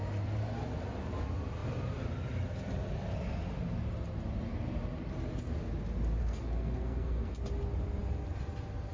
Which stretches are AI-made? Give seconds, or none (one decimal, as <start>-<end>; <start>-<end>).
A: 6.2-7.3